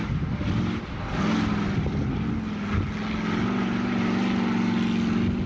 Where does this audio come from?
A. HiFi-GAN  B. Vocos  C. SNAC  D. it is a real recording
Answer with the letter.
D